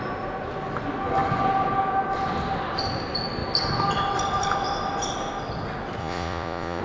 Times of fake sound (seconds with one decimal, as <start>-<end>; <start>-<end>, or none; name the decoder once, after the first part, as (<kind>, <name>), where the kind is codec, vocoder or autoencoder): 6.0-6.8 (vocoder, Vocos)